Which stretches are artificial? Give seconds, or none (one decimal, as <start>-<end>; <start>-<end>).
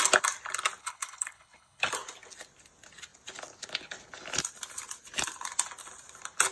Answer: 0.8-1.8